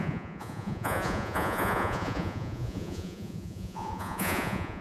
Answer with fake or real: fake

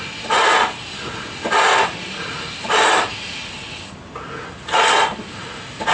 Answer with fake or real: real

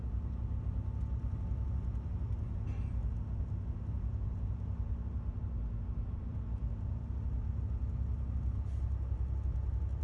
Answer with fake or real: real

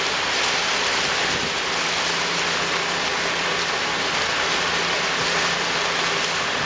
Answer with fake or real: real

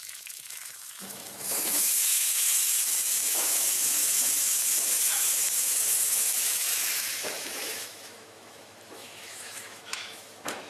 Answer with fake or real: fake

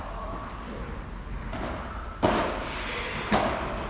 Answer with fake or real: real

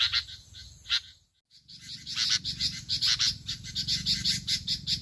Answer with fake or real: real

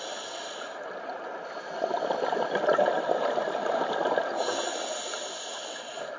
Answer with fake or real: real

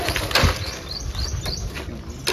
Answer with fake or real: real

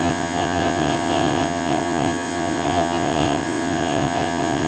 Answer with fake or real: fake